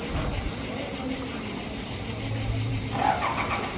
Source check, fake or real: fake